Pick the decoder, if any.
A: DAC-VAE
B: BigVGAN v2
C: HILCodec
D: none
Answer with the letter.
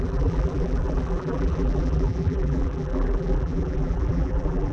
B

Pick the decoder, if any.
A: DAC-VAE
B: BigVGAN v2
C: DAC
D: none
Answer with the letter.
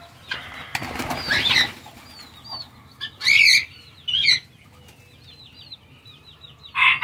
D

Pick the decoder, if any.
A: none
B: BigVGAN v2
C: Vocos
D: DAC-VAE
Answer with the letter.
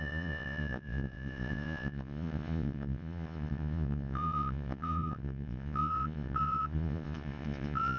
C